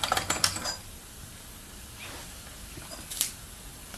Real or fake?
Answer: real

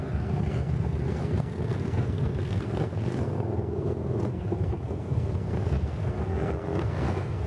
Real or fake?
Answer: fake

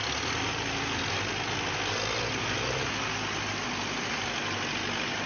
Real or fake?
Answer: real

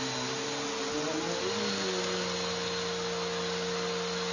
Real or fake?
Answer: real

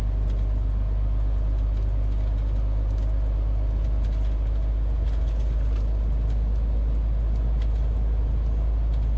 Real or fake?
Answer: real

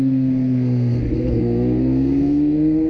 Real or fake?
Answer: fake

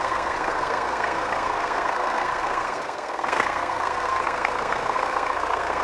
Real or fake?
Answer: fake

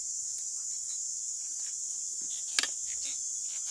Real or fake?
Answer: real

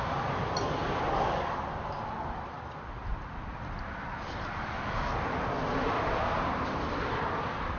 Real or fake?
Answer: real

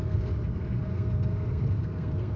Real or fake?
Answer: fake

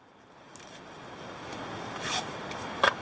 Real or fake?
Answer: real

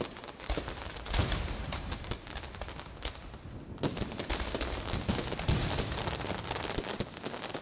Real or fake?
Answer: real